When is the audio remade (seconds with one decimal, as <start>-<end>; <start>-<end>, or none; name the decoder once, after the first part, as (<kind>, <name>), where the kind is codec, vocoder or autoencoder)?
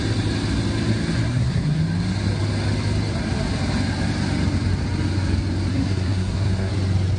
1.3-1.8 (codec, SNAC); 5.7-6.7